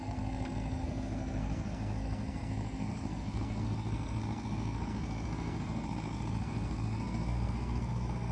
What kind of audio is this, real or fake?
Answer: fake